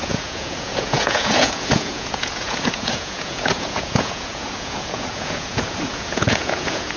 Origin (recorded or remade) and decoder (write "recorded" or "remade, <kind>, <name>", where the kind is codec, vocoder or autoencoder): remade, vocoder, Vocos